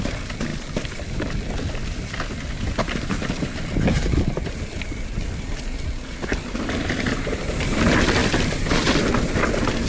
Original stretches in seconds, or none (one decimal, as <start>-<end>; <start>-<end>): 0.0-0.5; 1.0-8.2; 9.1-9.9